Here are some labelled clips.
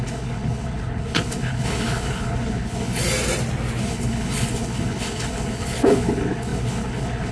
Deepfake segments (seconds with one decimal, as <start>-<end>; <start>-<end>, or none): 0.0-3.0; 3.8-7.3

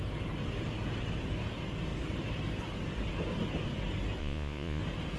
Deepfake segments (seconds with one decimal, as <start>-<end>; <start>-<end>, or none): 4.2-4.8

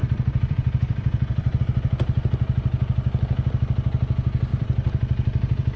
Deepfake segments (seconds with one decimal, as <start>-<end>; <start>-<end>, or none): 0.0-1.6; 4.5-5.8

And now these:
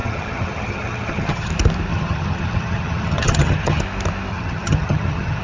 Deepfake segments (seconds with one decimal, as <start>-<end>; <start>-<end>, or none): 0.0-1.5; 1.9-3.8; 4.3-5.4

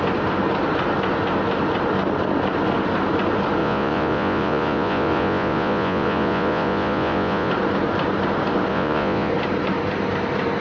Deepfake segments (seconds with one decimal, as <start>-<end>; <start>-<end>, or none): 3.6-7.5; 8.7-9.3

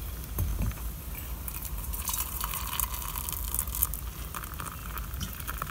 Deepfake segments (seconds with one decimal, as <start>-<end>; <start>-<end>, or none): 0.5-2.6